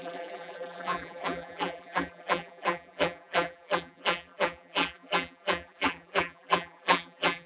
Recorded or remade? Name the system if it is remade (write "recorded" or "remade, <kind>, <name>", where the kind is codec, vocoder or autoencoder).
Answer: remade, vocoder, BigVGAN v2